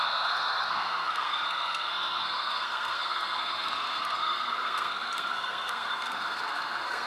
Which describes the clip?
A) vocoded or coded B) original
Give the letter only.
A